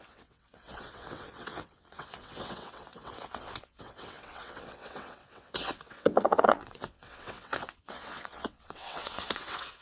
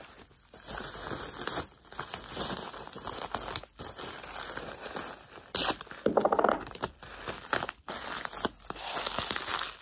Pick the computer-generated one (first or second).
first